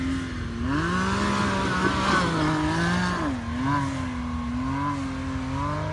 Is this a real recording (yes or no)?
yes